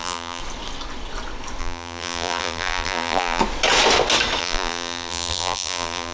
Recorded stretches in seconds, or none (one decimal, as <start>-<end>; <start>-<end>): 0.4-1.6; 3.4-4.4